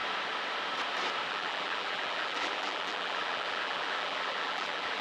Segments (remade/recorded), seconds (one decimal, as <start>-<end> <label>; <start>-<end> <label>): 0.0-1.3 recorded; 1.3-5.0 remade